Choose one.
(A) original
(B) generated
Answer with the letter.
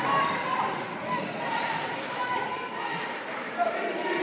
A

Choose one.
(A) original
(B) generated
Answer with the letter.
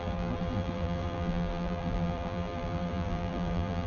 B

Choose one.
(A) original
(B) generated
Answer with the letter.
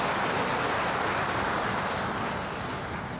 A